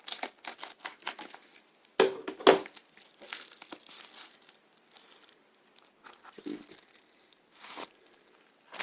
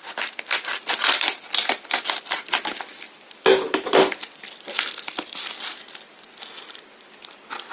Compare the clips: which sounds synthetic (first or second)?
second